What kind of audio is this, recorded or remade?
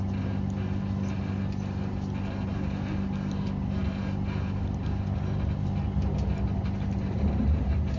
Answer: recorded